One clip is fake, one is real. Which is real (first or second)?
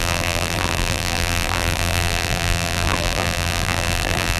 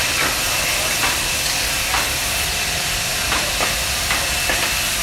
second